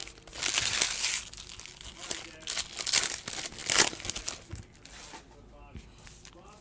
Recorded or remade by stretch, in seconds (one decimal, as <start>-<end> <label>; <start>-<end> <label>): 0.0-6.6 recorded